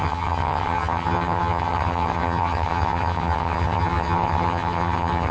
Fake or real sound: fake